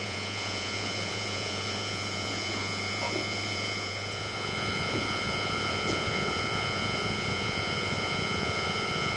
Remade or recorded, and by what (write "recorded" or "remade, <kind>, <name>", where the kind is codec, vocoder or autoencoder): remade, vocoder, Vocos